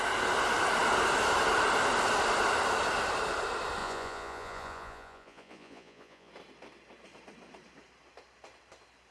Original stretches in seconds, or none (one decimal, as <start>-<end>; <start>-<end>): 0.0-3.8; 6.3-9.1